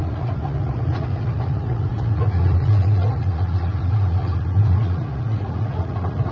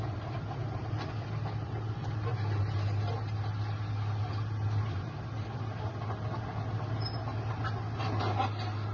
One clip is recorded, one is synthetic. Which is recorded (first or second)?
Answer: second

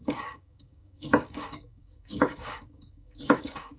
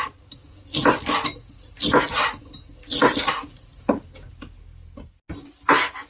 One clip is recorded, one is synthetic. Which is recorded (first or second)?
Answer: second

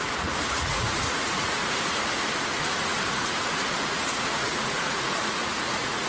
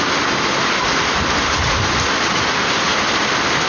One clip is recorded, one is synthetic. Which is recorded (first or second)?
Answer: second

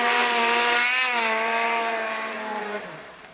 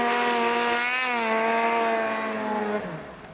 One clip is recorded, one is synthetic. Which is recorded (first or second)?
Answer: second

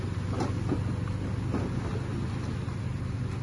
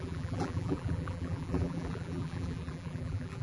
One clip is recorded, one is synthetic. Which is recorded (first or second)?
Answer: first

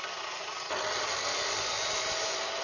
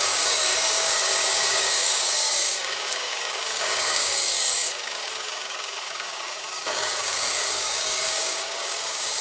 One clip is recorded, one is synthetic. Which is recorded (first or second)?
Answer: first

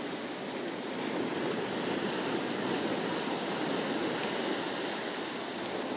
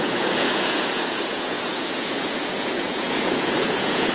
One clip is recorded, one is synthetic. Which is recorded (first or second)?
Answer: first